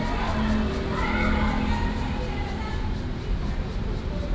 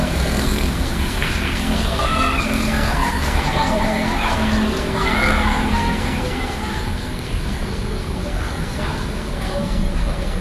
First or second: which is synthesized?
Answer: second